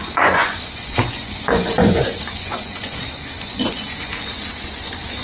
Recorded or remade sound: remade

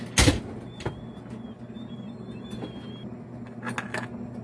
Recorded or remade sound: recorded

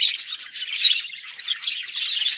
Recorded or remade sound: recorded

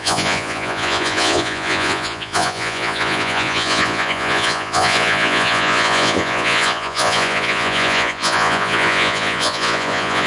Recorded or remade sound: remade